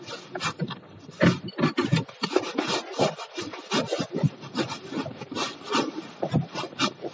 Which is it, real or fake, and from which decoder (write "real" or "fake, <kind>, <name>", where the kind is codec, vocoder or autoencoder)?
real